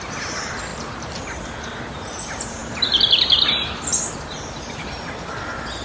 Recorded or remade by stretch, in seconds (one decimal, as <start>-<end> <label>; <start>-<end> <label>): 0.0-0.7 remade; 0.7-1.6 recorded; 1.6-5.8 remade